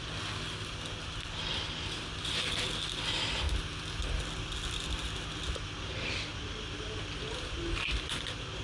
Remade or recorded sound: recorded